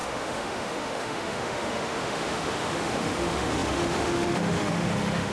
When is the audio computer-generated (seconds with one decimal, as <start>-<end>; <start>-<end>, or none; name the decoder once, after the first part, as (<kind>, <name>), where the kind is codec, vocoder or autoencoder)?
0.0-5.3 (autoencoder, DAC-VAE)